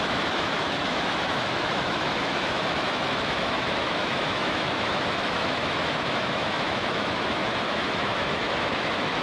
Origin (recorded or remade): remade